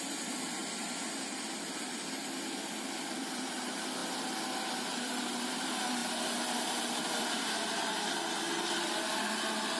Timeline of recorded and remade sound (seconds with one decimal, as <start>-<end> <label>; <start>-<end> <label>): 0.0-0.6 remade; 0.6-1.5 recorded; 1.5-2.2 remade; 2.2-3.0 recorded; 3.0-4.0 remade; 4.0-4.5 recorded; 4.5-6.0 remade; 6.0-6.5 recorded; 6.5-9.8 remade